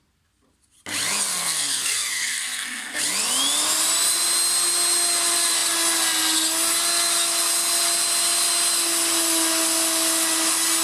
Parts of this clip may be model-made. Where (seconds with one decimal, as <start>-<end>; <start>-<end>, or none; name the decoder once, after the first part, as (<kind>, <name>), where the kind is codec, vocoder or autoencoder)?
1.3-3.0 (codec, SNAC)